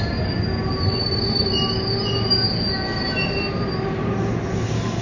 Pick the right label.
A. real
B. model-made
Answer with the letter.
A